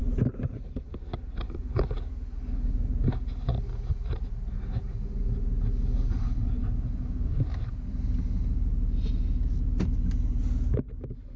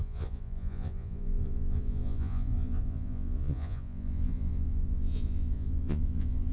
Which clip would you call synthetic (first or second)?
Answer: second